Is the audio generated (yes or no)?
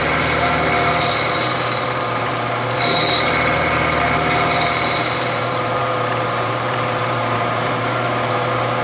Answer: yes